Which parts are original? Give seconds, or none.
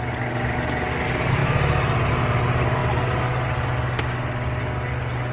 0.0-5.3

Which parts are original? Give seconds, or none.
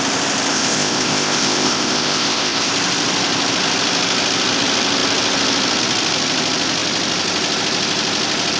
0.0-0.5; 2.7-8.6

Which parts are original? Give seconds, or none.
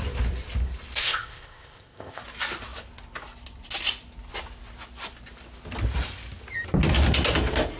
0.0-1.0; 2.2-7.8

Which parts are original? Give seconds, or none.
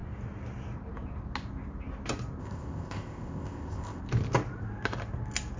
0.0-2.4; 4.0-5.6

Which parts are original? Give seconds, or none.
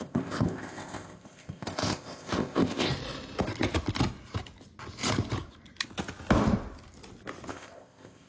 2.9-7.5